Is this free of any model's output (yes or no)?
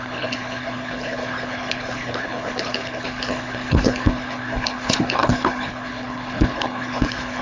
no